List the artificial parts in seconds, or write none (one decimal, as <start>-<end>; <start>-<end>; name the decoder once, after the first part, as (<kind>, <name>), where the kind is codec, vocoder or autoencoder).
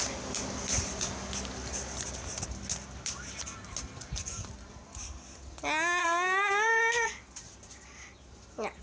6.0-6.8 (codec, SNAC)